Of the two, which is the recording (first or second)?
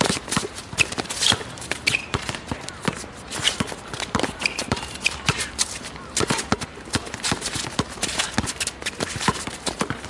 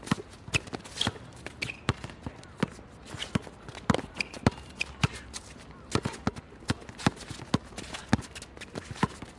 second